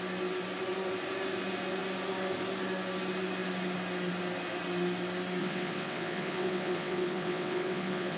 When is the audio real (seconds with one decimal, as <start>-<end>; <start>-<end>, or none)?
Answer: 0.0-5.4